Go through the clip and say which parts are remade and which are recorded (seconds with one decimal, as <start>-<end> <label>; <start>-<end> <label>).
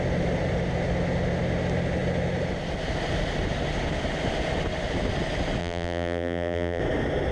0.0-5.6 recorded; 5.6-6.8 remade; 6.8-7.3 recorded